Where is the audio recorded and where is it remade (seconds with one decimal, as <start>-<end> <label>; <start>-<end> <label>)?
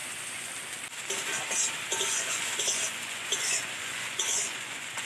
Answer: 0.0-0.5 remade; 0.5-1.9 recorded; 1.9-5.1 remade